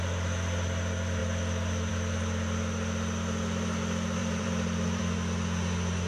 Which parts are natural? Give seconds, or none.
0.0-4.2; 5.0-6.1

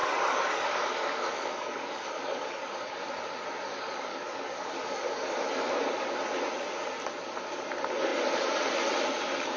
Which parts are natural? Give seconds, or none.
3.1-3.7; 5.7-9.6

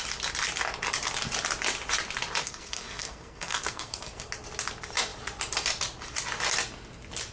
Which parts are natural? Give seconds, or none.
0.0-2.4; 4.3-7.3

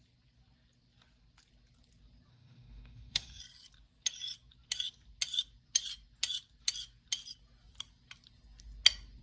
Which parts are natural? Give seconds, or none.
0.0-2.3; 3.4-9.2

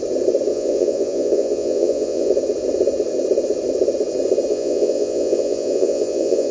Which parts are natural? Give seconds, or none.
0.0-0.5; 2.3-4.5